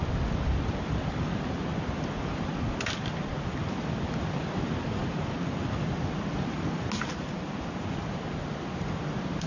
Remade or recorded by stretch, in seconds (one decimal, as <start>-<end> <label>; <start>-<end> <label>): 0.0-9.5 recorded